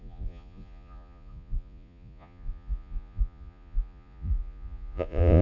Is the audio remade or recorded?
remade